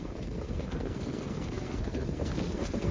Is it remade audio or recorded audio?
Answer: remade